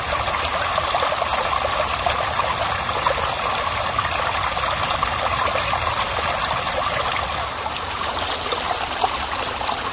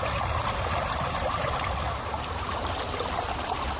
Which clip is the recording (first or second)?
first